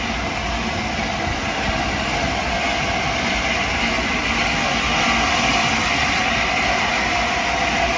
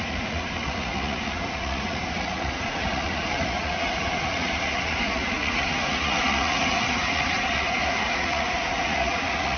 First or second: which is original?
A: first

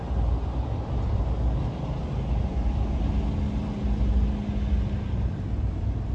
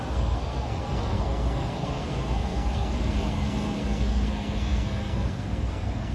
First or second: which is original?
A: first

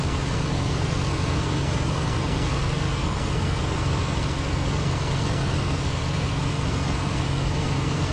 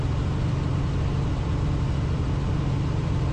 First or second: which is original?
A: second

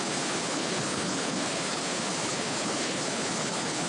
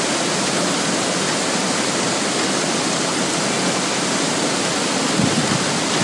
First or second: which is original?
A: second